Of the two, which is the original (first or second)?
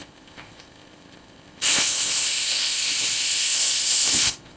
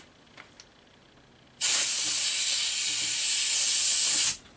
second